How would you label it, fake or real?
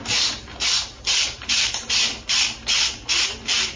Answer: real